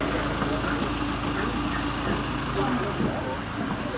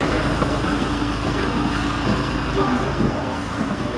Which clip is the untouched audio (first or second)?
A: first